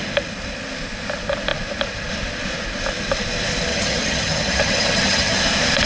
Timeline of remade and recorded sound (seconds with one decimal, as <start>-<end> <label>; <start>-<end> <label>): 0.0-3.7 recorded; 3.7-5.4 remade; 5.4-5.9 recorded